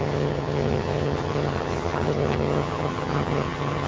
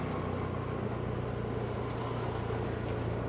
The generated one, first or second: first